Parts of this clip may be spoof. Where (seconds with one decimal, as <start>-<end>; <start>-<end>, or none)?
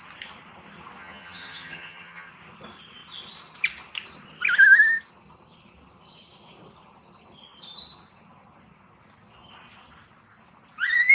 1.0-2.3